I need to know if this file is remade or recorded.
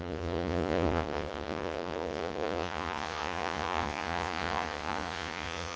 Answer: remade